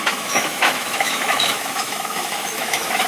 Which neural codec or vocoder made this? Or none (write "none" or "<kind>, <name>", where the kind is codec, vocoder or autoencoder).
autoencoder, DAC-VAE